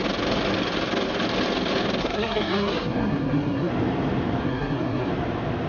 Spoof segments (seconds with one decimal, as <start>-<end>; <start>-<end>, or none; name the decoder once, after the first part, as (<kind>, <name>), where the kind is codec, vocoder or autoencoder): 2.0-3.7 (codec, SNAC); 4.4-5.1